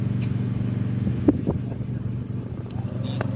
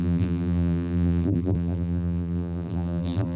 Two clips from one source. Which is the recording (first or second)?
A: first